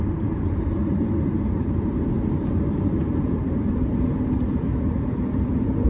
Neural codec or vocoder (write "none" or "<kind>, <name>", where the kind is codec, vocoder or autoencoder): vocoder, BigVGAN v2